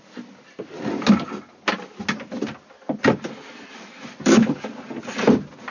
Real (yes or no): yes